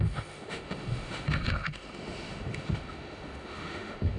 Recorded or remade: remade